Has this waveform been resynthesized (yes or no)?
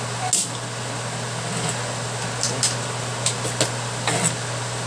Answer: no